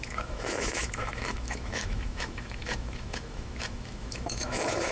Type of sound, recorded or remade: remade